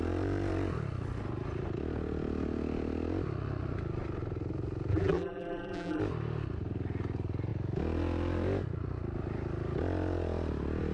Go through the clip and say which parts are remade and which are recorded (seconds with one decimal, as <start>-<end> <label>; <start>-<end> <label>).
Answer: 0.0-4.9 recorded; 4.9-6.0 remade; 6.0-10.9 recorded